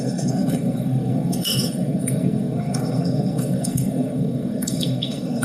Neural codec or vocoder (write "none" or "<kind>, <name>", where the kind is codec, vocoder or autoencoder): codec, SNAC